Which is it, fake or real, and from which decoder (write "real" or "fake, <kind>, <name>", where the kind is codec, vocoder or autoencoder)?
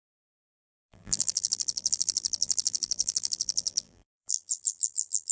fake, vocoder, BigVGAN v2